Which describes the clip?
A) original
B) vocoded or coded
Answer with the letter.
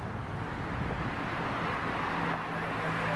A